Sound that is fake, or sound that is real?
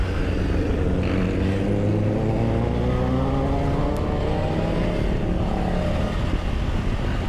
real